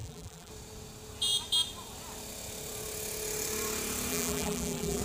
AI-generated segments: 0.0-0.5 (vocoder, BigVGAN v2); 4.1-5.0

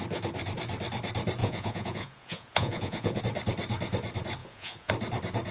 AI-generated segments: 1.4-3.2 (vocoder, Vocos); 4.4-4.9